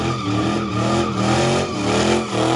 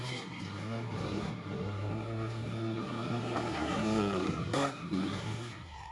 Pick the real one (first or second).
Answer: first